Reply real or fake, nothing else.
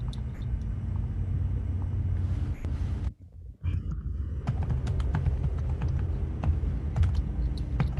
real